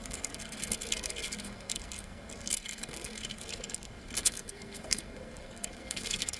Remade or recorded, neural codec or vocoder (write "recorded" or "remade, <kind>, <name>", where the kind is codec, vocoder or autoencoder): remade, codec, SNAC